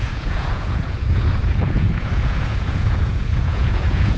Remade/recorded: remade